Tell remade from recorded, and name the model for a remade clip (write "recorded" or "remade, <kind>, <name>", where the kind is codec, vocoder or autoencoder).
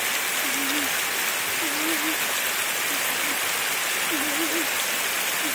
recorded